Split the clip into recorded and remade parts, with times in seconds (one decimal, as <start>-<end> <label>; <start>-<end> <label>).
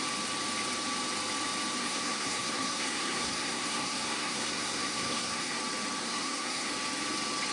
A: 0.0-1.8 recorded; 1.8-5.6 remade; 5.6-6.0 recorded; 6.0-6.7 remade; 6.7-7.5 recorded